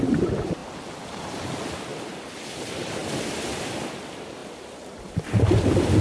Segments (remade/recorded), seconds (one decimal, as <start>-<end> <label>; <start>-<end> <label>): 0.0-6.0 recorded